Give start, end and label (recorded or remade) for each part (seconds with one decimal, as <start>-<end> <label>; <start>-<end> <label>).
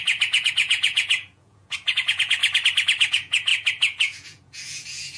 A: 0.0-2.4 remade; 2.4-3.1 recorded; 3.1-5.2 remade